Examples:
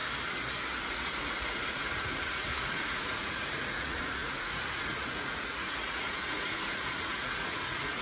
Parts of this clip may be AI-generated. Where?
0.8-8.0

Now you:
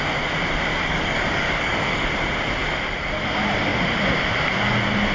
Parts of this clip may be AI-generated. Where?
0.7-2.1

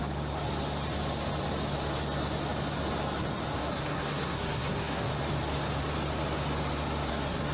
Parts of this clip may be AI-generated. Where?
3.6-5.1; 7.1-7.5

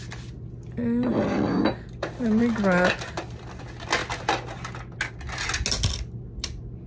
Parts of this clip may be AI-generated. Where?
none

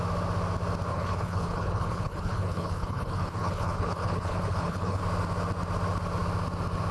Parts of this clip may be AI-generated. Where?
0.9-5.0

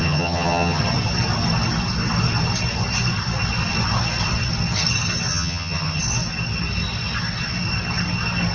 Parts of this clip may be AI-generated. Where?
0.0-0.8; 5.3-6.0

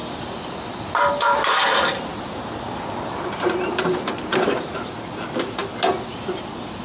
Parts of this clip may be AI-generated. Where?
0.9-2.1; 3.8-5.6